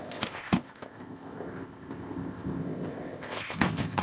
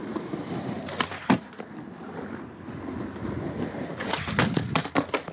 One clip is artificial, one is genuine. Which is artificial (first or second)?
first